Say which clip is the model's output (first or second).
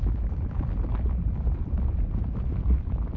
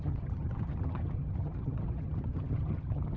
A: second